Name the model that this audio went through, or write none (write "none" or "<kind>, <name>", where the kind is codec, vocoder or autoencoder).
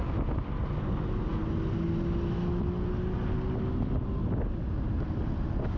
none